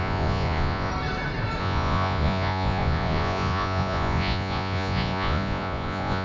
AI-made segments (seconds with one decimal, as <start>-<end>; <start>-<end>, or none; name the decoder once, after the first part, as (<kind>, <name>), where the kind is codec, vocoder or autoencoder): 0.0-0.9 (vocoder, Vocos); 1.6-6.2